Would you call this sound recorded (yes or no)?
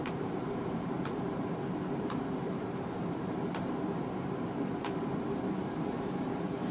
no